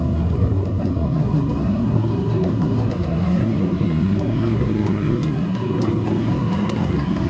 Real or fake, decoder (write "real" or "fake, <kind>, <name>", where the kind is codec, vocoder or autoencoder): fake, codec, SNAC